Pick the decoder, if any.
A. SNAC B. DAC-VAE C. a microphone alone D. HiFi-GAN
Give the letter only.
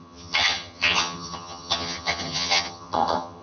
D